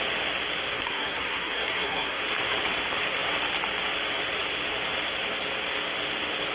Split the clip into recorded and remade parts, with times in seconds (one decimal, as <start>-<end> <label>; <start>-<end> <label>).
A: 0.0-0.8 recorded; 0.8-2.2 remade; 2.2-6.5 recorded